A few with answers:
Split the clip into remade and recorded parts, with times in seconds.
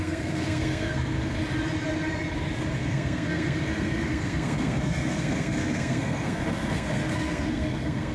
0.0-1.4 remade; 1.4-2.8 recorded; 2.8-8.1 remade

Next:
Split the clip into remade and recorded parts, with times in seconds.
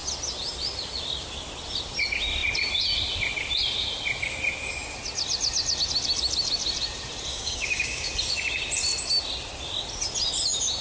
0.0-7.3 recorded; 7.3-8.1 remade; 8.1-10.8 recorded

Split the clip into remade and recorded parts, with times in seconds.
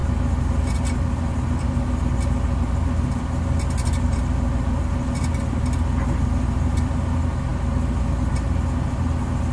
0.0-9.5 recorded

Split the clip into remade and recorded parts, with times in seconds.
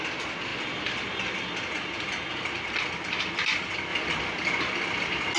0.0-5.4 recorded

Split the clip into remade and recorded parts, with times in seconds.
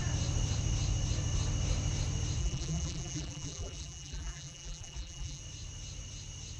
0.0-2.4 recorded; 2.4-5.4 remade; 5.4-6.6 recorded